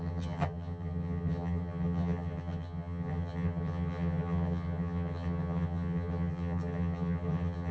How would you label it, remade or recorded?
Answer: remade